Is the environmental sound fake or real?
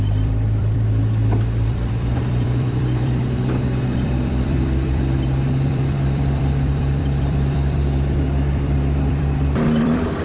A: fake